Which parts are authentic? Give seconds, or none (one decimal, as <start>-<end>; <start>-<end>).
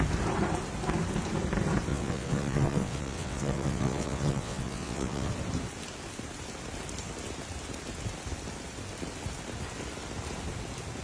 0.0-1.9; 5.3-11.0